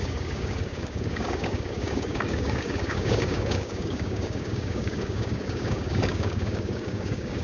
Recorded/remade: remade